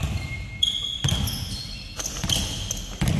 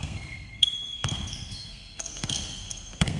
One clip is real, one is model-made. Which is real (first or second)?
first